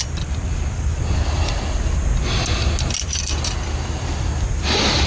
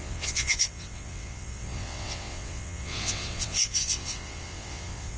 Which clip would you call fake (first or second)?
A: second